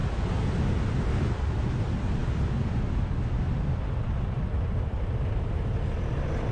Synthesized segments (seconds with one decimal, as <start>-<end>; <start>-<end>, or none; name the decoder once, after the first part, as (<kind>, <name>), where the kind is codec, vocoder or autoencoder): none